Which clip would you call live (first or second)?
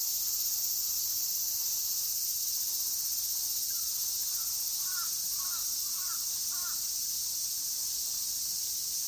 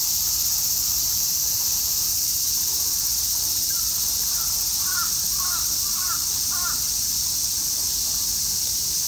first